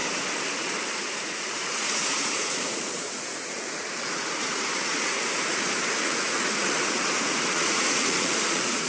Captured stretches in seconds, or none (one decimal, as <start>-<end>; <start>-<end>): 0.0-0.9